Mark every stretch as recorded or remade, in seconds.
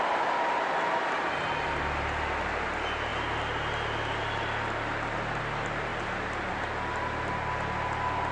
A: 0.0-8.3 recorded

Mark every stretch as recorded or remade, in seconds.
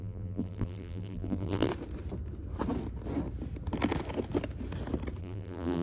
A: 0.0-1.7 remade; 1.7-5.2 recorded; 5.2-5.8 remade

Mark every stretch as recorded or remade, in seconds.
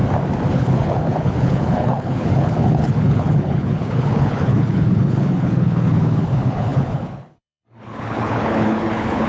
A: 0.0-0.5 recorded; 0.5-9.3 remade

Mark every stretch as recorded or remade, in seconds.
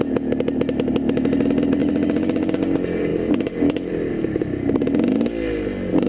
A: 0.0-1.8 recorded; 1.8-2.5 remade; 2.5-3.1 recorded; 3.1-4.1 remade; 4.1-6.1 recorded